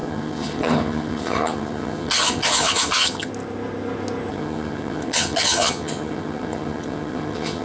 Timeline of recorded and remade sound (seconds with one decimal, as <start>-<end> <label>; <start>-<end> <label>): 0.0-3.3 remade; 3.3-4.3 recorded; 4.3-7.6 remade